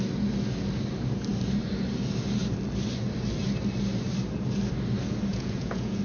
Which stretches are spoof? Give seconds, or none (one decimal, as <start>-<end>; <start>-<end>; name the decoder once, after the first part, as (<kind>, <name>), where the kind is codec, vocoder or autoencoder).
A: 5.3-6.0 (vocoder, Vocos)